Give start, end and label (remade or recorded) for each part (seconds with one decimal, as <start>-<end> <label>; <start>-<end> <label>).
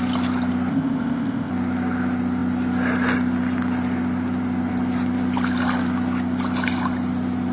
0.0-0.7 recorded; 0.7-1.5 remade; 1.5-7.5 recorded